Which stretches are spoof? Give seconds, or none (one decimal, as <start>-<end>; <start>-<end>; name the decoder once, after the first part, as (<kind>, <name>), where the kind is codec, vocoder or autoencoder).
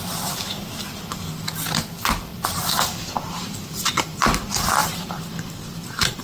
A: 2.3-4.2 (vocoder, BigVGAN v2); 4.8-6.2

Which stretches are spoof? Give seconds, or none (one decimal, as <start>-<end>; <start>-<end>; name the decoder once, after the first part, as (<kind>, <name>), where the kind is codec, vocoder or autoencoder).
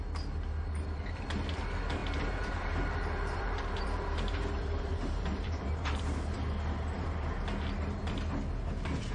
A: 2.0-6.0 (vocoder, BigVGAN v2)